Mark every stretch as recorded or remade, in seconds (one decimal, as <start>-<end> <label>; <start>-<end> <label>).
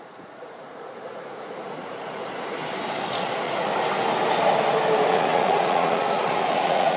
0.0-2.2 remade; 2.2-3.1 recorded; 3.1-3.7 remade; 3.7-5.1 recorded; 5.1-7.0 remade